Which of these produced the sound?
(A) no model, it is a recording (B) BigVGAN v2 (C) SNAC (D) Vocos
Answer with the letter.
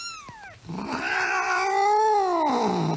A